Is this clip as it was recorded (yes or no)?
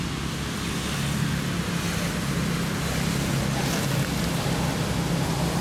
yes